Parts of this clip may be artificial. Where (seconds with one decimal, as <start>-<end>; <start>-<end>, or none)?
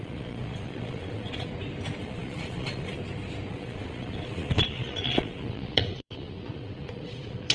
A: 0.0-1.5; 2.0-3.0; 3.5-7.5